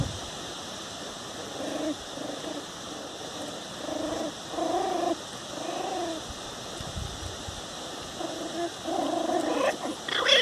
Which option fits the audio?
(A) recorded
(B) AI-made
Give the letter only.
A